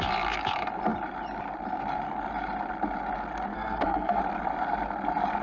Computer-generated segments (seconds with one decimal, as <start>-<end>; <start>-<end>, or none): 3.5-4.2

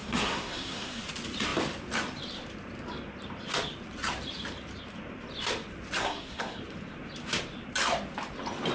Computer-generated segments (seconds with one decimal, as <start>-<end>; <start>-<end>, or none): 0.0-1.0; 6.0-6.6